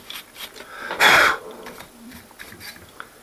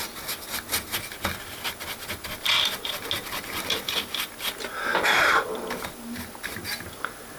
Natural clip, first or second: second